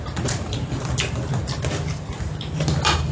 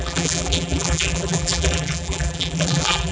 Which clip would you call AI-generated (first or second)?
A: second